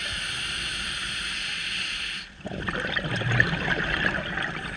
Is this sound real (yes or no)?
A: yes